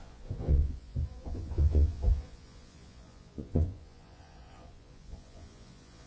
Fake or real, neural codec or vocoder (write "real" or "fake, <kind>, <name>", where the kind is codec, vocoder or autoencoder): fake, vocoder, Vocos